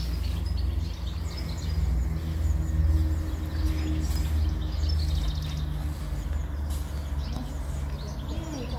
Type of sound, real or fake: real